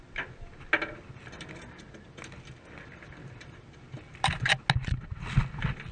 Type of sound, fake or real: real